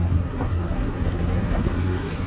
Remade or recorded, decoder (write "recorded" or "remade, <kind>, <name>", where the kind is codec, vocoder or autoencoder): remade, codec, SNAC